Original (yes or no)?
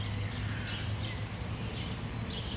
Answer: yes